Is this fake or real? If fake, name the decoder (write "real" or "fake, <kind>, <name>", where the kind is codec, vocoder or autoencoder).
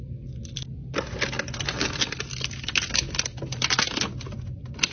real